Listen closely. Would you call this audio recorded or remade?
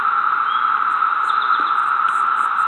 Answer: recorded